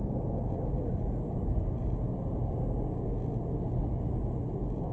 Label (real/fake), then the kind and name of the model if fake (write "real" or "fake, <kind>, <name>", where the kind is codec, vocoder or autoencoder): real